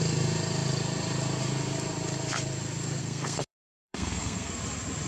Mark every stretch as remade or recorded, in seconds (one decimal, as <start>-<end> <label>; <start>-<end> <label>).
0.0-3.0 recorded; 3.0-4.5 remade; 4.5-5.1 recorded